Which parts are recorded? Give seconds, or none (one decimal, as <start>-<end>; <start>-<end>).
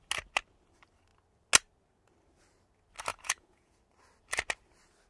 0.0-3.1; 3.8-5.1